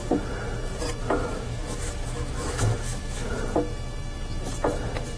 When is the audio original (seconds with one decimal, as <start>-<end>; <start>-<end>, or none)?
0.0-1.0; 3.4-5.2